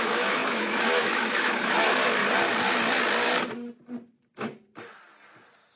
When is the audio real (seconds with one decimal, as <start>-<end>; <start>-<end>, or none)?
2.2-5.8